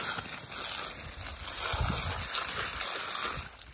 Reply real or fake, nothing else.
real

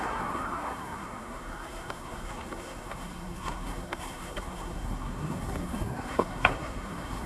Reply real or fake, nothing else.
fake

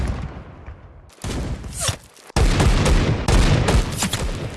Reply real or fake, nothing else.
real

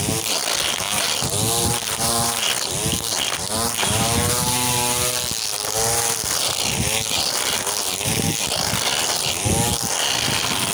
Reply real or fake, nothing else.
real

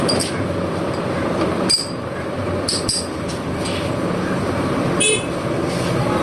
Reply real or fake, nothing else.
real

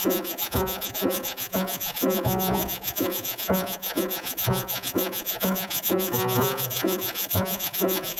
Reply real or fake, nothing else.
fake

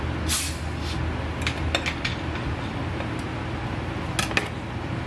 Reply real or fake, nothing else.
real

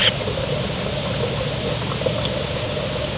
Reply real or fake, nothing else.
real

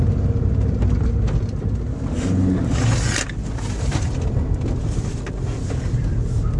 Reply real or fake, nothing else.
real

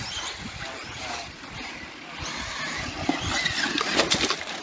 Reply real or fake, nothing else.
real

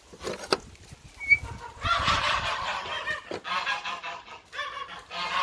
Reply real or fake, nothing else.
fake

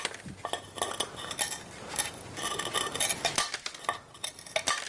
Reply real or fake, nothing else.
real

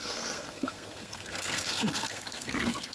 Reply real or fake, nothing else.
fake